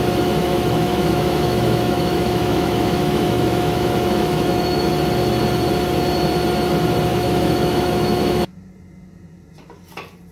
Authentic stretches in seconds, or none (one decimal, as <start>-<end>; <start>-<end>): 0.0-0.4; 4.9-7.1; 8.5-10.3